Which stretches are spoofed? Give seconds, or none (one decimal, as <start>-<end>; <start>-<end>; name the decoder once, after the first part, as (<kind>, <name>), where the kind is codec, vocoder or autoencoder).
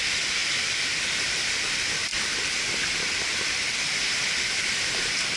none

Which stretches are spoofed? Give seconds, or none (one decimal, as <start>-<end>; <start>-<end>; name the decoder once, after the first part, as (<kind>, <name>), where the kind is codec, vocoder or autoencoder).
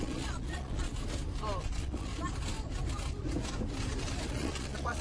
0.0-0.9 (vocoder, Vocos); 1.6-2.1; 4.3-5.0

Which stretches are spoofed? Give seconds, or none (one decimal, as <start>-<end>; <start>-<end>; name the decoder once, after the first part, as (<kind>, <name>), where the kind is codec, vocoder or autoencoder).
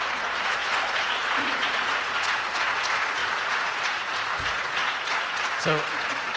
0.0-6.4 (vocoder, Vocos)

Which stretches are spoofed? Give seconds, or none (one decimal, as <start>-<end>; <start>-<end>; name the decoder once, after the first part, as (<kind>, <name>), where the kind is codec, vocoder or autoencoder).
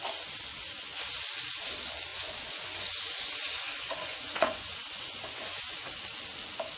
0.5-1.0 (vocoder, Vocos); 2.1-5.9